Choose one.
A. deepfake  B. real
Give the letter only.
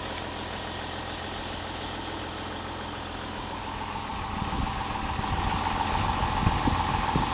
B